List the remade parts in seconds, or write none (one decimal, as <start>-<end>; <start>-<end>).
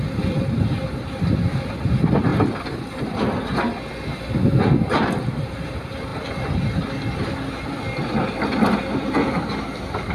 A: 0.0-2.3; 3.9-10.1